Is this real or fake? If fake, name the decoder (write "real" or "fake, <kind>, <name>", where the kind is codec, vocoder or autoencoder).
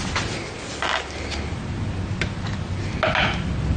real